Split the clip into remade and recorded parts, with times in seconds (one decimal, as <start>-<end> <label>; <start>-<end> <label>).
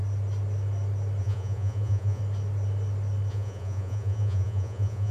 0.0-1.2 recorded; 1.2-2.2 remade; 2.2-3.3 recorded; 3.3-5.1 remade